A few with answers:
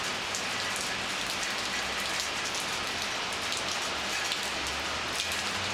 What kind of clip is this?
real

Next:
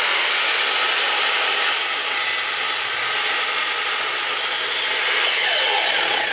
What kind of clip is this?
real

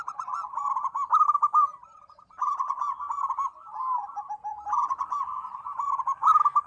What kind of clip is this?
fake